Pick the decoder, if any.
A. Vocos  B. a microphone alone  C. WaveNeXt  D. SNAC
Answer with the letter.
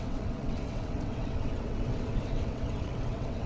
C